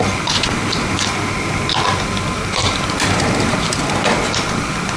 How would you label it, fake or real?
real